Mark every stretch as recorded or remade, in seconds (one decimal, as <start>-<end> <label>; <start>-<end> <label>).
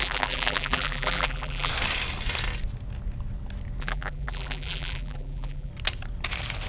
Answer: 0.0-1.7 remade; 1.7-3.8 recorded; 3.8-5.7 remade; 5.7-6.7 recorded